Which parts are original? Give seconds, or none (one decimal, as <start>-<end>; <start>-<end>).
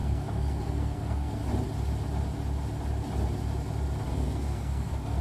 1.4-4.1